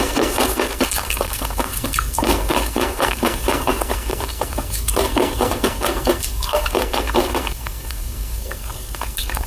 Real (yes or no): no